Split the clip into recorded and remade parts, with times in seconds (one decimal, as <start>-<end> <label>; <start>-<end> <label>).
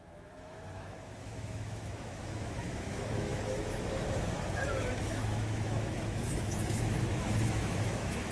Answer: 0.0-8.3 remade